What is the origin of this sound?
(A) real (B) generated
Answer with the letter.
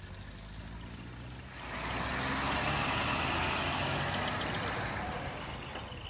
A